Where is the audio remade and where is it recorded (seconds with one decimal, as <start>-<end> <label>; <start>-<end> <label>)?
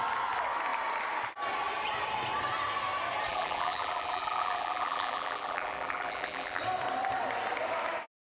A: 0.0-3.3 recorded; 3.3-6.6 remade; 6.6-8.2 recorded